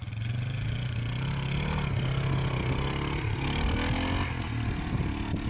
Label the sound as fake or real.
real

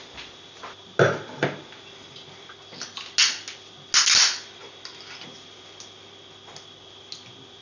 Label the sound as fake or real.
real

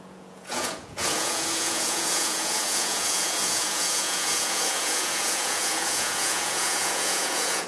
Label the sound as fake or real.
fake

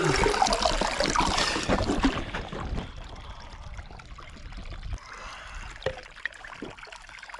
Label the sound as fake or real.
real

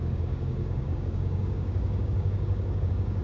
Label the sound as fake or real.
fake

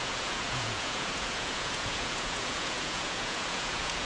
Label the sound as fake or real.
fake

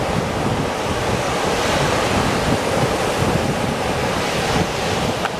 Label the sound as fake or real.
real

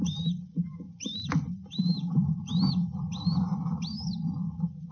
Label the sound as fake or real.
real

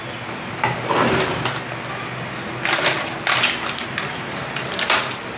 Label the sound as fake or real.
real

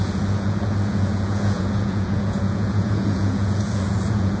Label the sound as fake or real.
fake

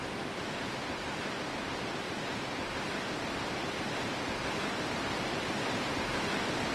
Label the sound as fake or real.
real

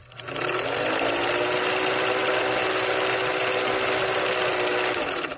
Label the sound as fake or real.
real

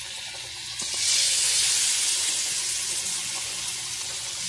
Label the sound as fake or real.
fake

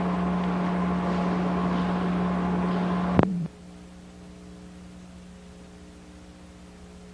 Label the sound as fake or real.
real